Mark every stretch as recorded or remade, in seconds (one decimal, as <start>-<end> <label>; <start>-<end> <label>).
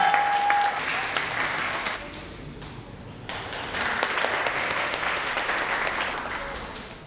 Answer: 0.0-4.6 recorded; 4.6-5.3 remade; 5.3-7.1 recorded